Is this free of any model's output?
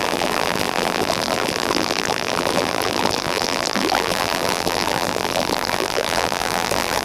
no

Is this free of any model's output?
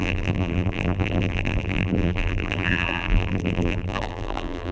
no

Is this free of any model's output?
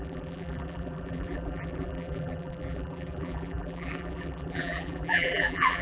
no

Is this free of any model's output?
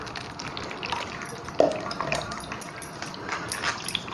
yes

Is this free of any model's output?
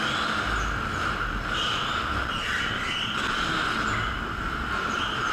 yes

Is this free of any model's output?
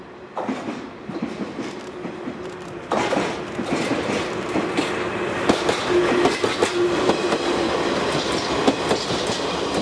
no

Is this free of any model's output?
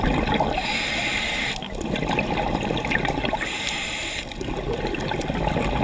yes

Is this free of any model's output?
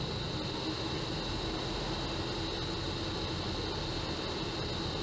yes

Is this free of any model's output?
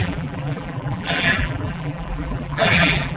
no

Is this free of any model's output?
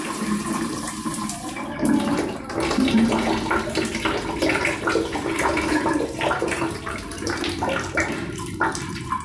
no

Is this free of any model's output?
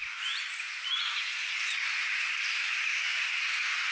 no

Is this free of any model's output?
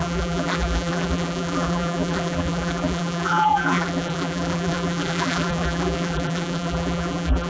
no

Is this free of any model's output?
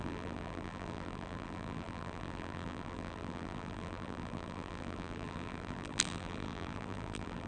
no